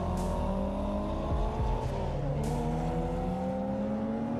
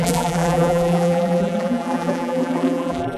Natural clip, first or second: first